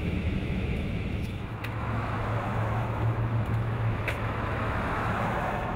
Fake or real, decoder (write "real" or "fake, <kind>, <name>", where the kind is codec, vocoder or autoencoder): fake, autoencoder, DAC-VAE